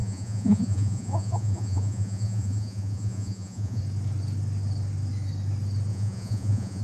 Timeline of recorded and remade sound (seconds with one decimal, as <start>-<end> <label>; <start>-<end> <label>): 0.0-3.8 remade; 3.8-5.9 recorded; 5.9-6.8 remade